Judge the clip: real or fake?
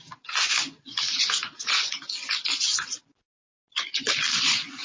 real